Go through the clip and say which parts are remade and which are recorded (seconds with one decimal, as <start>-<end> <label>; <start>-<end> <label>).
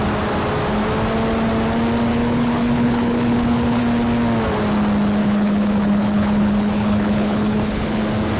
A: 0.0-2.1 recorded; 2.1-3.8 remade; 3.8-5.2 recorded; 5.2-8.0 remade; 8.0-8.4 recorded